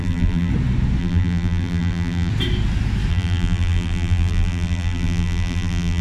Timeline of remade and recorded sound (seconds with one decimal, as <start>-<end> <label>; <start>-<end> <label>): 0.0-0.5 remade; 0.5-1.0 recorded; 1.0-2.3 remade; 2.3-3.1 recorded; 3.1-6.0 remade